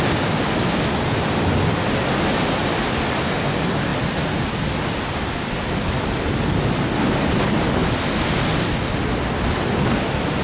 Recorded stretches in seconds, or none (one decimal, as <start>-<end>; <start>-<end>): 0.0-10.4